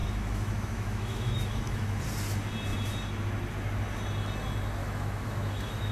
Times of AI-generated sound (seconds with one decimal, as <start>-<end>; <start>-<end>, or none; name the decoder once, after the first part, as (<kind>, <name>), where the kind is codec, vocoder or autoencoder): 0.0-2.0 (autoencoder, DAC-VAE); 4.8-5.9